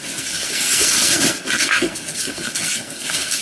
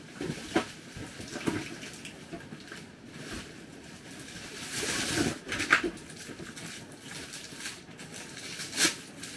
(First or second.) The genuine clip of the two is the second